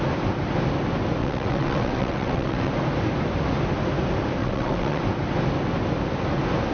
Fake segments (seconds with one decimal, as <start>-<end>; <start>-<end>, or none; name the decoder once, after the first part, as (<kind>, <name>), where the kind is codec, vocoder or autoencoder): 1.2-2.7 (vocoder, WaveNeXt); 4.4-5.0